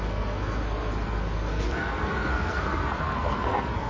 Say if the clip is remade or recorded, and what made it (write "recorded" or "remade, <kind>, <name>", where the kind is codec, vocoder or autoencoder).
remade, codec, SNAC